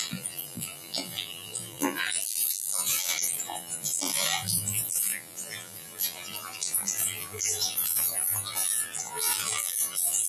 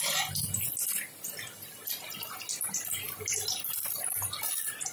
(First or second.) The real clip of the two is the second